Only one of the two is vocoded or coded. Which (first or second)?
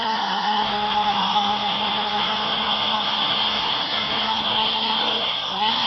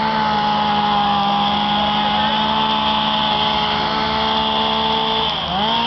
first